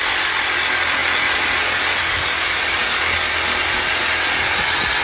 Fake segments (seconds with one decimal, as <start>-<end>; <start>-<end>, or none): none